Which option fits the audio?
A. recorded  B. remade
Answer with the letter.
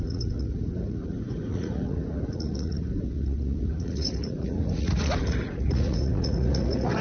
B